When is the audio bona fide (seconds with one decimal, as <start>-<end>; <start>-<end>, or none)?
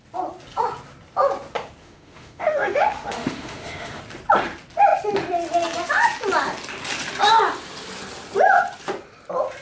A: 0.0-1.8; 4.0-9.6